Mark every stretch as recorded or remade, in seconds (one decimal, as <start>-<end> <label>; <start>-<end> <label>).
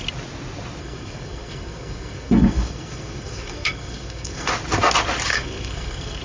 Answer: 0.0-0.8 recorded; 0.8-4.5 remade; 4.5-5.3 recorded; 5.3-6.2 remade